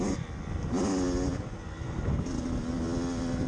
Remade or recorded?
recorded